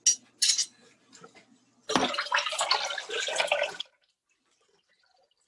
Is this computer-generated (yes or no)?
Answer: no